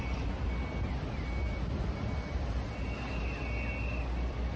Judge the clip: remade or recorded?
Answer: recorded